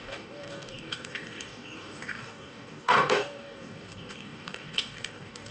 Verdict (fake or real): fake